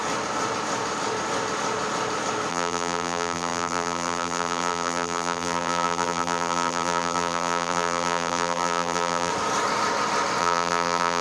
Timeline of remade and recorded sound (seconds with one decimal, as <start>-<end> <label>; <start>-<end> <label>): 0.0-2.5 recorded; 2.5-9.3 remade; 9.3-10.4 recorded; 10.4-11.2 remade